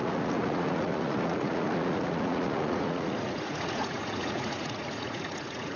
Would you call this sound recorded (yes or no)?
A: no